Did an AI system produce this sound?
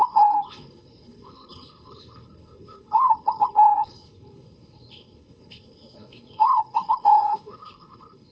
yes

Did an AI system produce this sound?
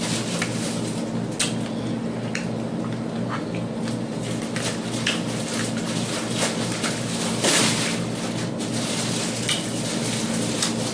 no